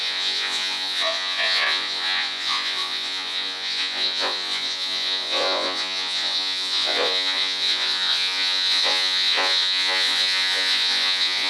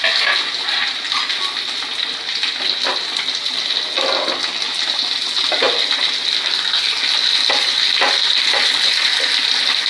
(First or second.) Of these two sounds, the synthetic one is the first